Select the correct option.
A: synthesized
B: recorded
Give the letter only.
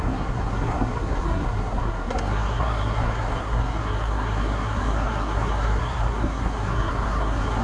A